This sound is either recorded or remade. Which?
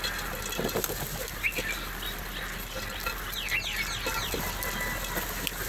recorded